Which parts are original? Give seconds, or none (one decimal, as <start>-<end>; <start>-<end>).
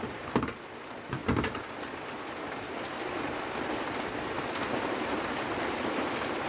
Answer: 0.0-6.5